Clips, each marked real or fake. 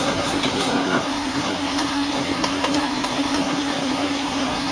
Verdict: fake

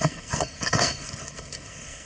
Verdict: fake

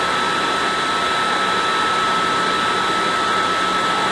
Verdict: real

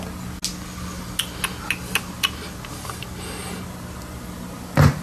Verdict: real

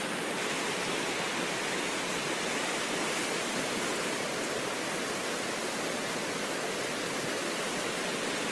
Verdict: real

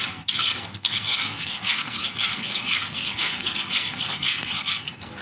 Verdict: fake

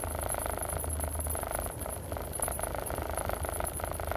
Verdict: real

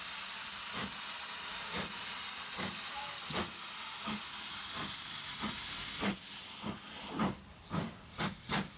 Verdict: real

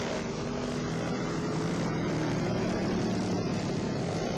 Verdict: real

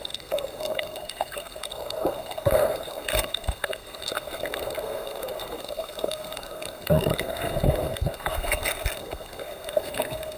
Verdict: fake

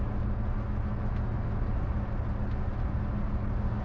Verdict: real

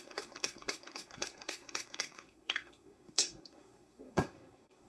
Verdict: fake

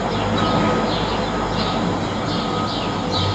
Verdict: real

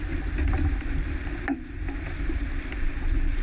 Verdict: real